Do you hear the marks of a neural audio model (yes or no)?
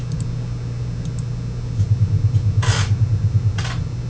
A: no